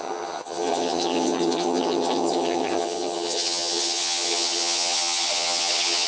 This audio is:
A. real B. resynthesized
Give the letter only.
B